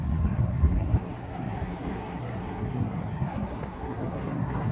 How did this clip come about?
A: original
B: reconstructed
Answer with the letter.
B